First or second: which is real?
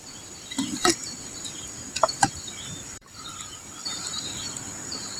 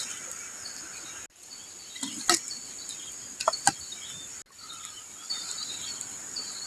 second